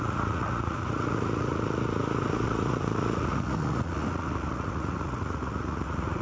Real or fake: fake